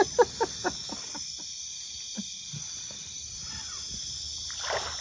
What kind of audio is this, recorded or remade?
recorded